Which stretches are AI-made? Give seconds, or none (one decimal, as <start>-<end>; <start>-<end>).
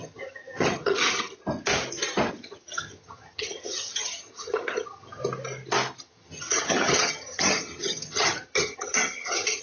0.0-1.4; 2.3-5.2; 6.0-9.6